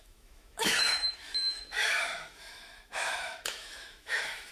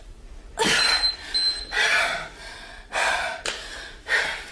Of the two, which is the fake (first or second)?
first